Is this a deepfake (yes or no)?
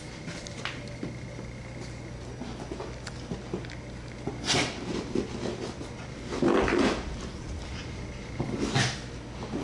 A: no